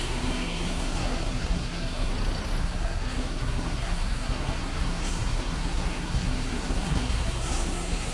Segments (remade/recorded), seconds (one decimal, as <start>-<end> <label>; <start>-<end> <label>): 0.0-2.1 remade; 2.1-2.6 recorded; 2.6-8.1 remade